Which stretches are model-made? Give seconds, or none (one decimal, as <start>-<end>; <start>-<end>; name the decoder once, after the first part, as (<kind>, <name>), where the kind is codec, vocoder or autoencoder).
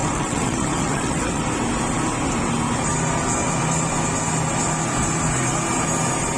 0.0-1.4 (vocoder, WaveNeXt)